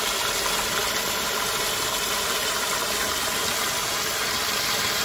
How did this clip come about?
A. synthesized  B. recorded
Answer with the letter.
B